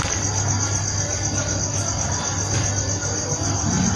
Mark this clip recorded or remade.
recorded